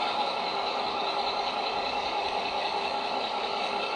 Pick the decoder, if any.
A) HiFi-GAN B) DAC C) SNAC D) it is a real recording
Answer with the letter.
B